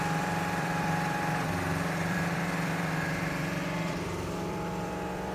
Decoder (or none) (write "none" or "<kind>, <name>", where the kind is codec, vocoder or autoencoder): vocoder, BigVGAN v2